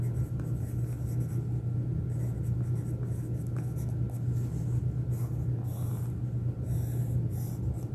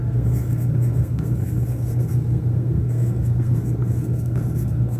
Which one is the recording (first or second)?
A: first